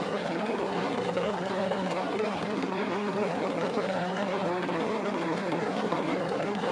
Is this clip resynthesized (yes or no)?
yes